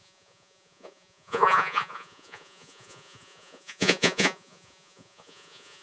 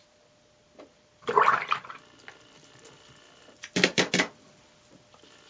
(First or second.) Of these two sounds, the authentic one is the second